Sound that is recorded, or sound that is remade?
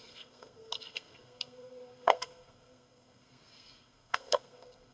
remade